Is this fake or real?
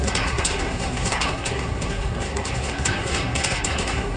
fake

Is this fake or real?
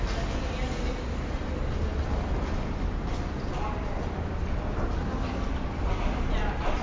real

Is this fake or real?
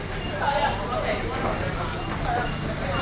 real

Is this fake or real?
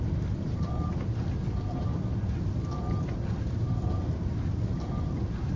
real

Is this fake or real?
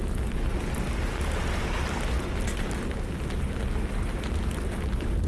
real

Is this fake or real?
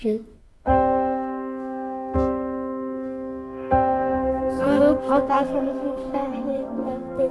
fake